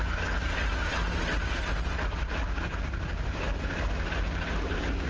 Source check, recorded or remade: recorded